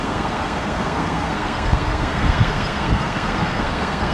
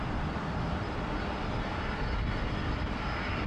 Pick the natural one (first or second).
second